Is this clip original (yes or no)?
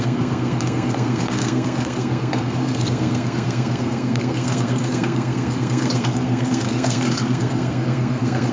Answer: no